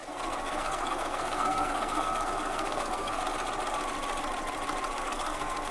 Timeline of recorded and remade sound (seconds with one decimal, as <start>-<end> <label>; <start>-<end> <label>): 0.0-3.2 remade; 3.2-4.9 recorded; 4.9-5.7 remade